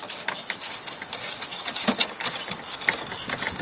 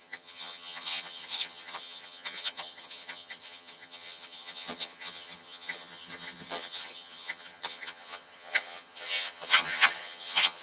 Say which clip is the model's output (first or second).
second